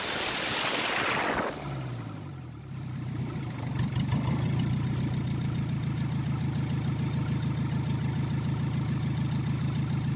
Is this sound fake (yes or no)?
no